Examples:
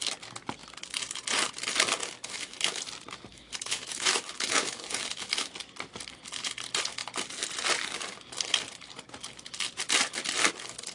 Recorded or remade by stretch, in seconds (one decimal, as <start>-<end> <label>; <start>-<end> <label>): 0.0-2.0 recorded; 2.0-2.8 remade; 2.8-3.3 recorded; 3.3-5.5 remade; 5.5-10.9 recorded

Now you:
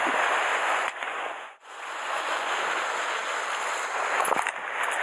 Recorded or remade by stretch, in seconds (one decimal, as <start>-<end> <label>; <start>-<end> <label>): 0.0-0.5 recorded; 0.5-2.5 remade; 2.5-5.0 recorded

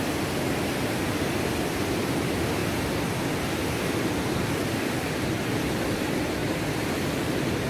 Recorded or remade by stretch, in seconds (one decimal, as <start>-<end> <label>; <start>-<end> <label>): 0.0-7.7 recorded

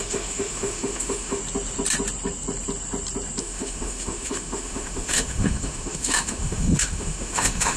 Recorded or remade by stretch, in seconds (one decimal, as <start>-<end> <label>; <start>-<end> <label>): 0.0-1.4 remade; 1.4-3.4 recorded; 3.4-7.8 remade

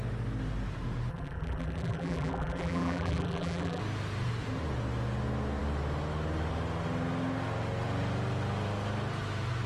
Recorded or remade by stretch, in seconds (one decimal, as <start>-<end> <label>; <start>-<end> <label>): 0.0-1.1 recorded; 1.1-3.8 remade; 3.8-9.7 recorded

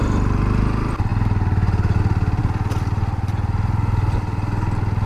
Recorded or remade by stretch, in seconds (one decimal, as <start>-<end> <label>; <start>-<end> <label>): 0.0-5.1 recorded